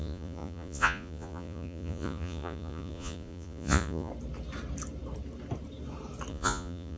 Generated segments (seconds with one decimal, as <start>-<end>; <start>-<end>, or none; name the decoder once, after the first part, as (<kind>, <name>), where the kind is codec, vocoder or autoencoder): 0.0-4.1 (vocoder, Vocos); 6.3-7.0